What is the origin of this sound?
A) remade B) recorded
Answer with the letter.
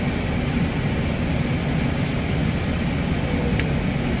B